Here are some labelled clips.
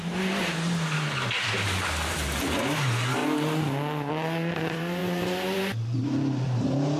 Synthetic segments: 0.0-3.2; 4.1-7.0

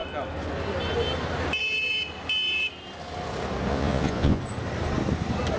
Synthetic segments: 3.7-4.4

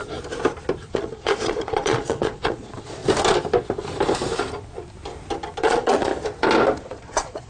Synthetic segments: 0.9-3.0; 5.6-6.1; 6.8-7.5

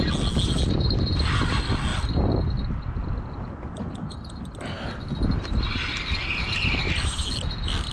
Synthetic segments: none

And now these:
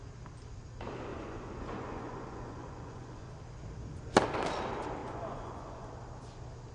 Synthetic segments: 1.1-3.3; 5.0-5.9

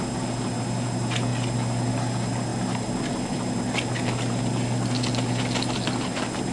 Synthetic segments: none

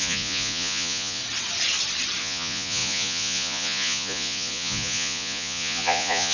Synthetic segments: 0.0-1.2; 2.2-6.3